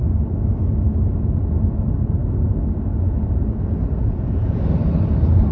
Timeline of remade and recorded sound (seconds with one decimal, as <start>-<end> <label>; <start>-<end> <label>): 0.0-4.0 recorded; 4.0-4.6 remade; 4.6-5.5 recorded